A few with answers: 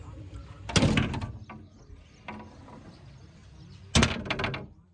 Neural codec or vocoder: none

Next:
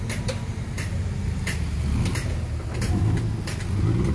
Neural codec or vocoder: none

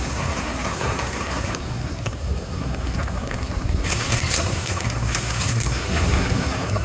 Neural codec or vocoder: codec, SNAC